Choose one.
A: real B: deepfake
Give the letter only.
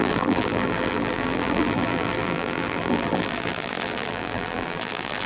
B